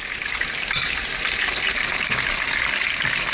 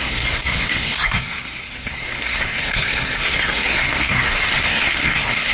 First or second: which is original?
first